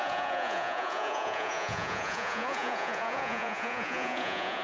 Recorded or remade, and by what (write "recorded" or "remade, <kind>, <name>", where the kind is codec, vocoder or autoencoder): remade, vocoder, Vocos